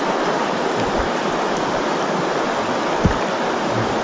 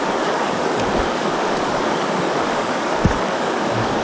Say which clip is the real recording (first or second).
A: first